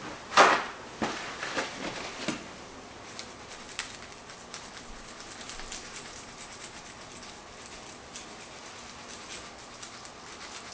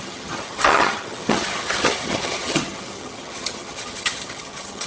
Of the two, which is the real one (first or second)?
first